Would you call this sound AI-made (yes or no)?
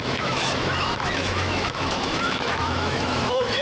yes